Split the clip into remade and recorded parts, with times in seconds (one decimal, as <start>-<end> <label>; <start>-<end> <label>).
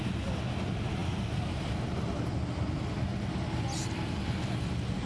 0.0-5.1 recorded